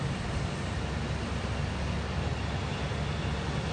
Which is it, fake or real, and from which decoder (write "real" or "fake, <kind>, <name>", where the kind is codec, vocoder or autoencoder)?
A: real